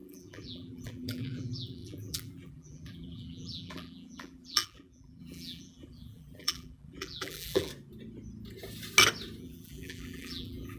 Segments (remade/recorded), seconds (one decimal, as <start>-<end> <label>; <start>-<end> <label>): 0.0-7.7 remade; 7.7-9.4 recorded; 9.4-10.8 remade